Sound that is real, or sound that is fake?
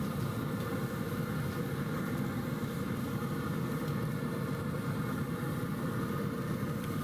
real